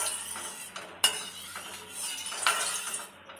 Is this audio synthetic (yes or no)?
no